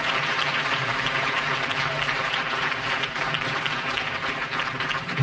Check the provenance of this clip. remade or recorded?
remade